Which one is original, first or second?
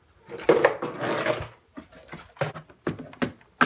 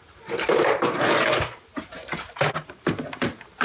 first